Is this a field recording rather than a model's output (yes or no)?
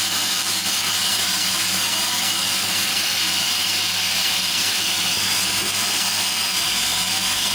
no